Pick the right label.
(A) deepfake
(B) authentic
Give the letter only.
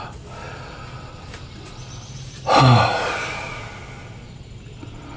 B